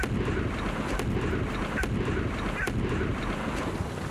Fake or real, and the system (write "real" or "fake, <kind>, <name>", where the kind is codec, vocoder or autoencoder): real